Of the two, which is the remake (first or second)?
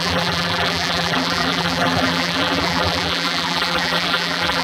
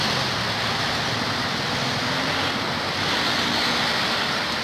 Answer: first